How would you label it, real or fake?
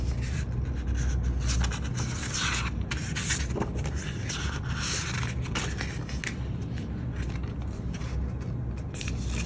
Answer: real